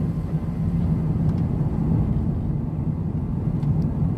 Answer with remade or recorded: recorded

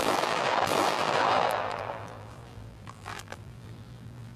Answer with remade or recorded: remade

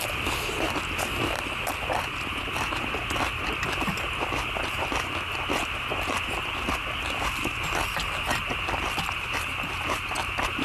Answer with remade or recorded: recorded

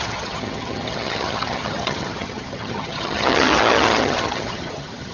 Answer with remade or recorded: remade